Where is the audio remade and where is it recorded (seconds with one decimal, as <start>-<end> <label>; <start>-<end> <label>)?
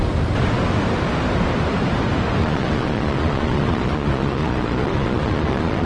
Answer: 0.0-2.4 recorded; 2.4-5.9 remade